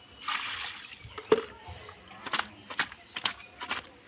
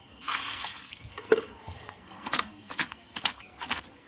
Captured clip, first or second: first